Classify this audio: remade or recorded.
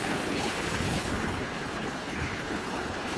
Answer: remade